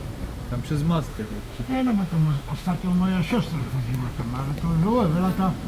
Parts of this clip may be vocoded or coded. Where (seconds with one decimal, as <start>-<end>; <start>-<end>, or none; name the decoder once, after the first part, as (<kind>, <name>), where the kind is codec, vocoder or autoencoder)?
1.1-2.7 (autoencoder, DAC-VAE); 3.6-4.2